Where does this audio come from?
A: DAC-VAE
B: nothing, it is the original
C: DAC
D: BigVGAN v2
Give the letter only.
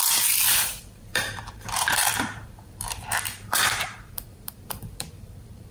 D